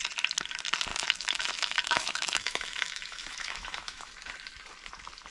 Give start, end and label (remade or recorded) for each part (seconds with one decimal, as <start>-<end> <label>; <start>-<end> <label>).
0.0-0.9 recorded; 0.9-4.1 remade; 4.1-5.3 recorded